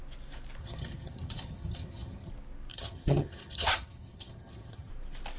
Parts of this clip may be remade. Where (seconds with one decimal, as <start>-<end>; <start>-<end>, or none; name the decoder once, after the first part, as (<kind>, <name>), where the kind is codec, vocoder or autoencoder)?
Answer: 0.6-2.3 (vocoder, HiFi-GAN); 2.7-4.9